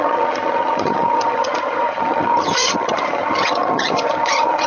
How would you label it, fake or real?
fake